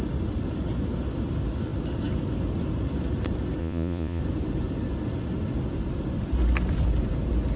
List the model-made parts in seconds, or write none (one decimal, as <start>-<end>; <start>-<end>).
3.6-4.2